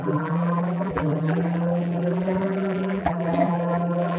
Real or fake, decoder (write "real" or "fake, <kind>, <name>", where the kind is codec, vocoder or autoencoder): fake, vocoder, BigVGAN v2